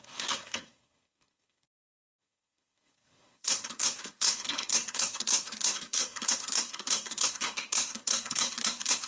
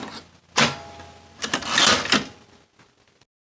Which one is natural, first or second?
second